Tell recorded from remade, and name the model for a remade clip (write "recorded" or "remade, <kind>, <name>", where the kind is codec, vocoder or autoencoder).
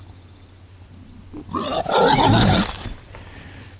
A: recorded